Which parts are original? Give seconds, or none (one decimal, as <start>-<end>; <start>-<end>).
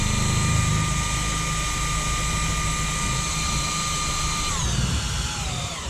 0.7-4.2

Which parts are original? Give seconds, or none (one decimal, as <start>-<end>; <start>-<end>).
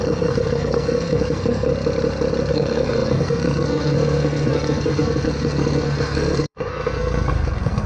1.7-2.5